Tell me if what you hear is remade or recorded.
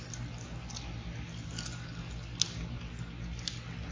recorded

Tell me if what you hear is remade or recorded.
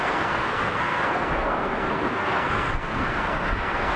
remade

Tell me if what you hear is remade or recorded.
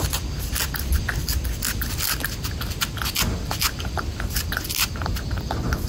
recorded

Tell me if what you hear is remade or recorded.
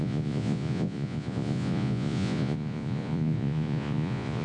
remade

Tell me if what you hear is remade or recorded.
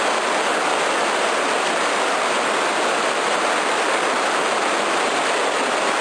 recorded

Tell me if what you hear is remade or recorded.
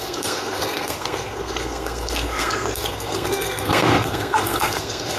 remade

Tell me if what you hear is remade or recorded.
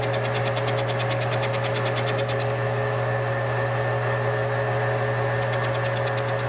recorded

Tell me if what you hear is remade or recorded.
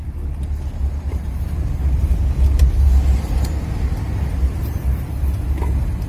recorded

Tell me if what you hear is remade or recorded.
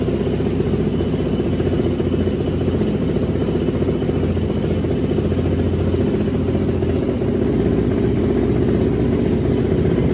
recorded